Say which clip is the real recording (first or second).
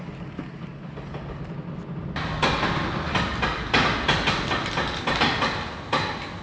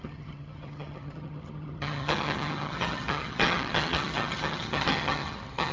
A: first